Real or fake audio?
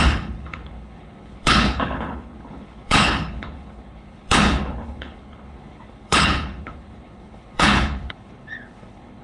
fake